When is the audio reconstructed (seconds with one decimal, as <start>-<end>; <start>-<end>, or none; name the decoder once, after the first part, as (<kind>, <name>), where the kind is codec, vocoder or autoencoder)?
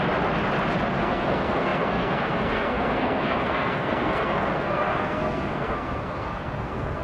1.0-7.0 (codec, SNAC)